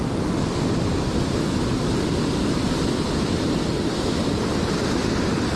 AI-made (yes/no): yes